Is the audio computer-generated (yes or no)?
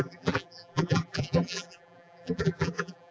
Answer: yes